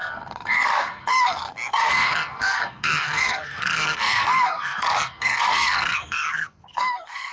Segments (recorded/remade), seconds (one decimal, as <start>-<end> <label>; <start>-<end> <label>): 0.0-7.3 remade